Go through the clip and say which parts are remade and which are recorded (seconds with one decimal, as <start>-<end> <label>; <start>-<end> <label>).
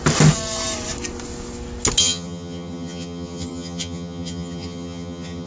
0.0-2.0 recorded; 2.0-5.5 remade